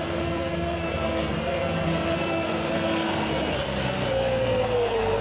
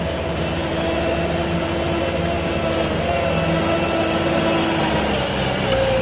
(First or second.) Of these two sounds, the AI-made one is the first